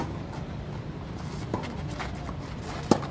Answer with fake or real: real